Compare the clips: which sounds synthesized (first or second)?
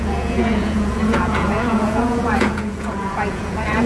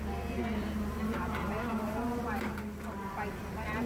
first